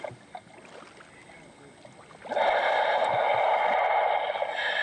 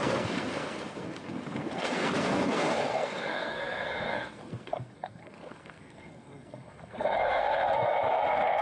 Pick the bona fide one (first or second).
first